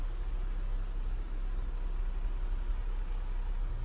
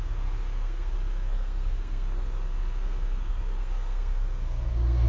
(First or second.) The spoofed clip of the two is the second